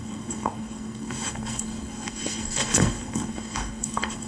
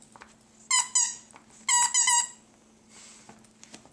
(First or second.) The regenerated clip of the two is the first